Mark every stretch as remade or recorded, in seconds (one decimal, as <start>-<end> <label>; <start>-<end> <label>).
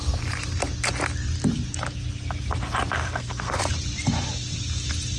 0.0-3.0 recorded; 3.0-3.6 remade; 3.6-5.2 recorded